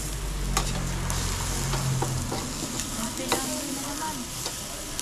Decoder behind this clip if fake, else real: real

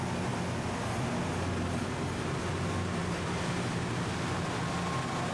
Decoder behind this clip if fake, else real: real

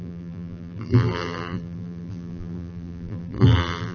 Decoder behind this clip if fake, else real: fake, vocoder, BigVGAN v2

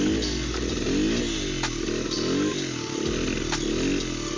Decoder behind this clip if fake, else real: real